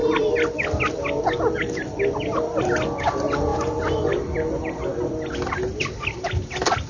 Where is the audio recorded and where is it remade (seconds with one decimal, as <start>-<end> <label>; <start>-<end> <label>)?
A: 0.0-6.9 recorded